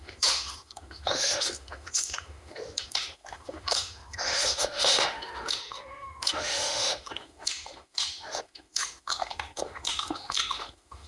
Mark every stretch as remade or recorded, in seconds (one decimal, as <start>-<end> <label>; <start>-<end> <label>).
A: 0.0-11.1 remade